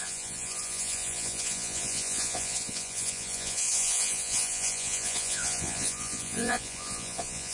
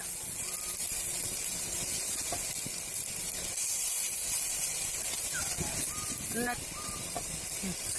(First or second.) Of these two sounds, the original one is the second